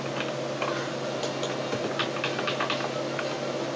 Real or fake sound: real